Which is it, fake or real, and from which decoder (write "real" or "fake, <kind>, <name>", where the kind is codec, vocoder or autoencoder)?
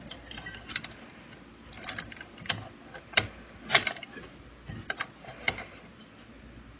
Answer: real